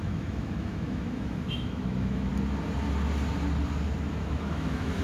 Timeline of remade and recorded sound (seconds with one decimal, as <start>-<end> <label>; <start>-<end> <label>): 0.0-2.3 remade; 2.3-4.1 recorded; 4.1-5.0 remade